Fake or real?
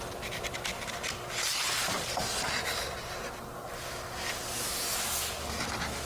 real